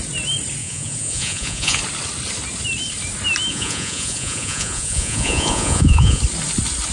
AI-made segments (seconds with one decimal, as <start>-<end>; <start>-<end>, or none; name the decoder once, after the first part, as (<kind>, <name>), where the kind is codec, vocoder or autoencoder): 0.6-1.8 (vocoder, Vocos); 3.5-6.2